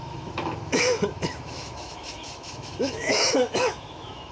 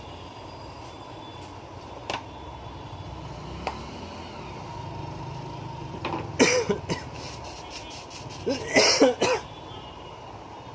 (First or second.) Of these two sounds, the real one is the second